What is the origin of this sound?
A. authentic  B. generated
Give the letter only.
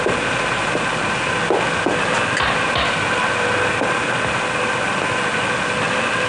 A